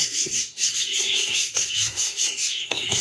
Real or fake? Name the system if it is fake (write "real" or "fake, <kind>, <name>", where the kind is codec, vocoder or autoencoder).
fake, codec, SNAC